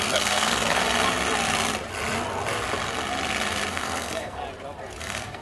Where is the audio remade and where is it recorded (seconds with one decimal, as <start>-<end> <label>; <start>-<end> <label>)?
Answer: 0.0-0.8 remade; 0.8-3.7 recorded; 3.7-4.4 remade; 4.4-5.0 recorded; 5.0-5.4 remade